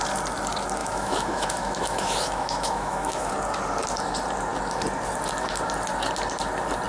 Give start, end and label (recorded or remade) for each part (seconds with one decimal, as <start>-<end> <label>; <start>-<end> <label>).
0.0-0.8 recorded; 0.8-3.3 remade; 3.3-6.9 recorded